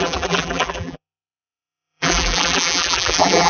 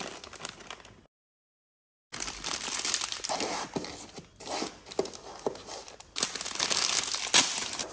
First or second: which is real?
second